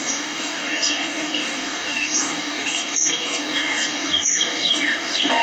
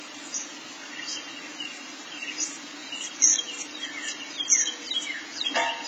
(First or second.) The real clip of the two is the second